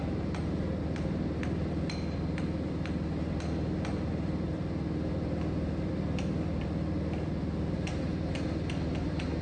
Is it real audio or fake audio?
real